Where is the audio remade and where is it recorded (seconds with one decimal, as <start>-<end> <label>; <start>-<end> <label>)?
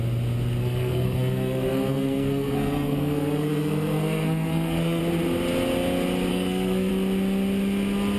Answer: 0.0-0.6 recorded; 0.6-5.0 remade; 5.0-6.3 recorded; 6.3-6.9 remade; 6.9-8.2 recorded